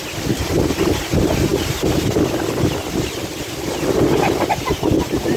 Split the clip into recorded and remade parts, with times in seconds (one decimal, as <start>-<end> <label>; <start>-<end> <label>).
0.0-5.4 recorded